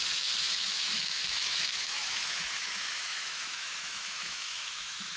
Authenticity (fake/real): fake